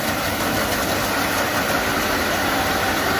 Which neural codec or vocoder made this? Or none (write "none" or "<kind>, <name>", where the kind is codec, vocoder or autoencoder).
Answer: none